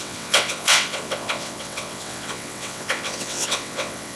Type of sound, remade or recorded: remade